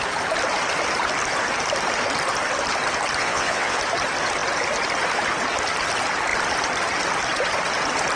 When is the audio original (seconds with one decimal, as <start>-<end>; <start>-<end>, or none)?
0.0-3.2; 3.8-8.2